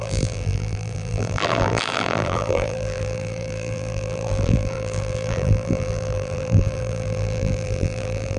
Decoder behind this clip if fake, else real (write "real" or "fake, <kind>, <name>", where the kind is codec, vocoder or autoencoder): fake, vocoder, BigVGAN v2